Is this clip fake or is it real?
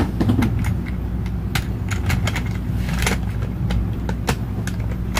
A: real